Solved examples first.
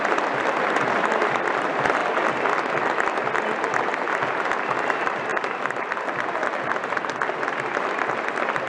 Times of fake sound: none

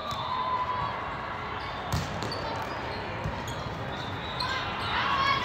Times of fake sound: 1.9-5.4

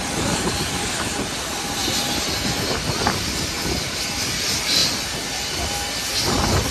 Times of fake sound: none

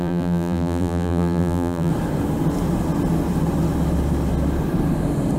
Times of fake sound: 0.0-1.9